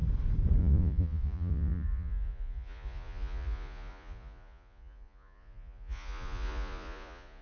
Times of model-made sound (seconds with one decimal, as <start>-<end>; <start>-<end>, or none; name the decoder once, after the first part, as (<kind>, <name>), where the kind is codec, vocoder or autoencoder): 0.6-7.4 (vocoder, Vocos)